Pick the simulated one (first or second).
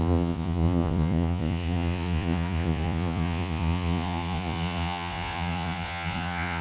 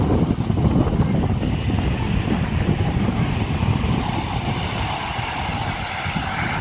first